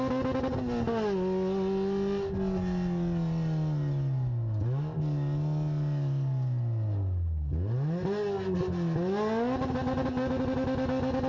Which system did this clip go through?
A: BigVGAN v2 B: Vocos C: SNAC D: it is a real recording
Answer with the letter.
D